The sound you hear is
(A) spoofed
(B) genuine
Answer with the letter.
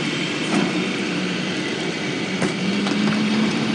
A